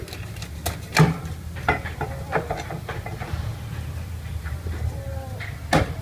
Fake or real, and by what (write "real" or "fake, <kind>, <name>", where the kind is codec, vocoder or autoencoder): real